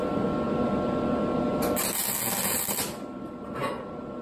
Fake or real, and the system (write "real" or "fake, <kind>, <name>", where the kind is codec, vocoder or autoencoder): real